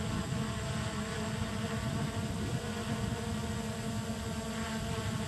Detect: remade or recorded recorded